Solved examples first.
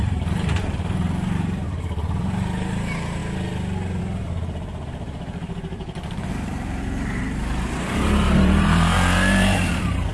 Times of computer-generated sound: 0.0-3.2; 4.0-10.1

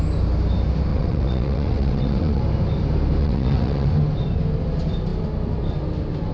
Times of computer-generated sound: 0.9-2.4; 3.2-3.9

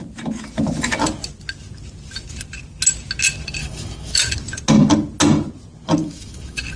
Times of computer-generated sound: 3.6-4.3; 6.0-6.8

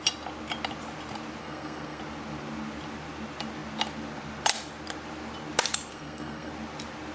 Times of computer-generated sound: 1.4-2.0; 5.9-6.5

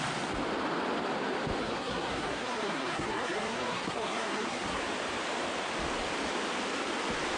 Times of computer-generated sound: 1.6-4.8